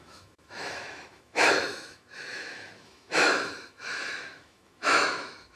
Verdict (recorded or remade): remade